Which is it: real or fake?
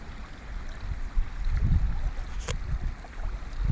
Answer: real